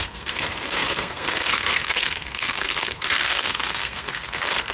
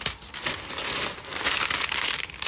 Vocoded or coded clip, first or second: first